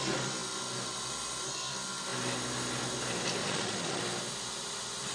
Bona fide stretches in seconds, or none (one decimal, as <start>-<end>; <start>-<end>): 0.0-3.4; 4.0-5.1